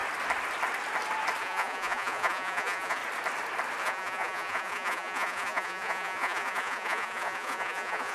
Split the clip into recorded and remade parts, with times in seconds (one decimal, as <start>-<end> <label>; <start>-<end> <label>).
0.0-1.4 recorded; 1.4-3.0 remade; 3.0-3.8 recorded; 3.8-8.1 remade